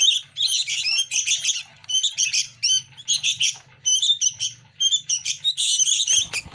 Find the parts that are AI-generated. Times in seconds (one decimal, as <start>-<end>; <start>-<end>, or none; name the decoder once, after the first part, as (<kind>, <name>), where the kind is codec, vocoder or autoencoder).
none